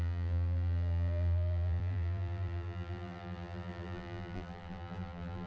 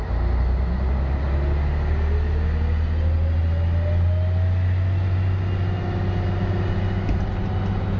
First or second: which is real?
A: second